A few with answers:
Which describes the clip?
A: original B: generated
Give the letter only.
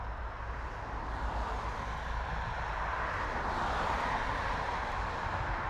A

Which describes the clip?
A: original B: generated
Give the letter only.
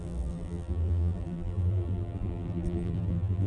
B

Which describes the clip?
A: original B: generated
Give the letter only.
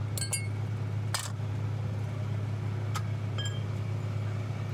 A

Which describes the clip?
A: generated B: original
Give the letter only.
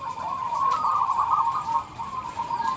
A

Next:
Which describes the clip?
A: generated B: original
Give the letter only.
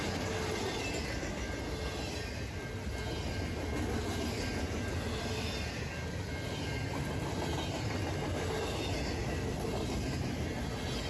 B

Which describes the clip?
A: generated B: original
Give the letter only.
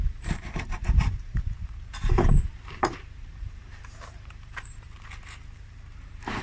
A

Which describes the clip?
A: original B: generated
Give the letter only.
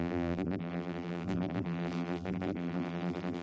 B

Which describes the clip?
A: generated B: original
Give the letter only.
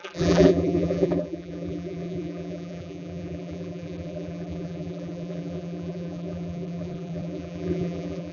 A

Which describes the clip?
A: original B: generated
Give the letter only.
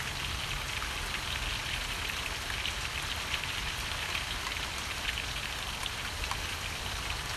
B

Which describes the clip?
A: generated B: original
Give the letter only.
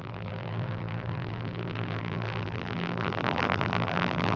A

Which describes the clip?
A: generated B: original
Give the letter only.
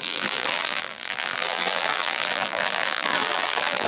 A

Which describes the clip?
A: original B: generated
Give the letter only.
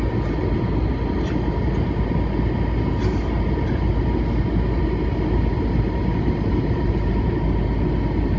A